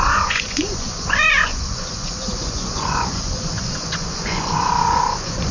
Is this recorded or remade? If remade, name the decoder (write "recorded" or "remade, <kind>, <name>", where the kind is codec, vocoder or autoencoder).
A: remade, vocoder, Vocos